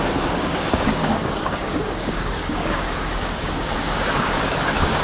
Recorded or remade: remade